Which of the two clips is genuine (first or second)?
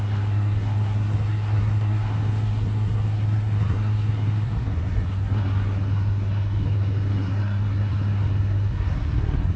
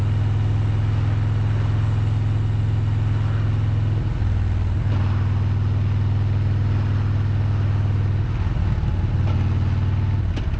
second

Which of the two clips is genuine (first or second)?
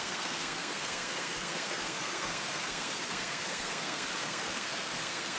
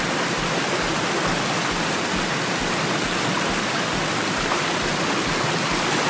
second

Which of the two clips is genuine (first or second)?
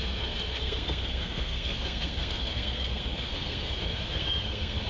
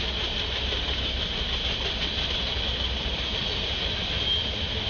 second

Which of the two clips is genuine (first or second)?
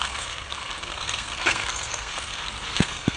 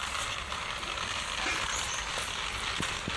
second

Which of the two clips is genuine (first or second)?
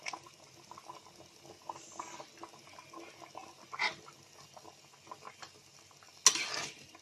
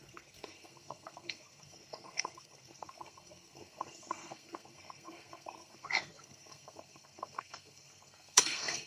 first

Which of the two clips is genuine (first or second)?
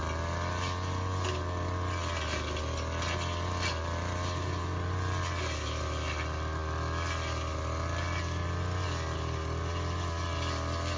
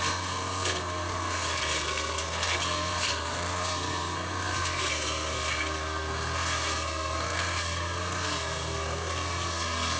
first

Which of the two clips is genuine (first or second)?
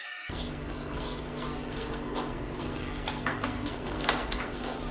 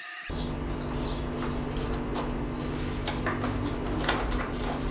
second